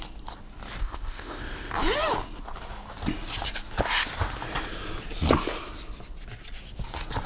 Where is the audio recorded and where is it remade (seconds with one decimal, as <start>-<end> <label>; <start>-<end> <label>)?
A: 0.0-0.8 recorded; 0.8-1.7 remade; 1.7-7.3 recorded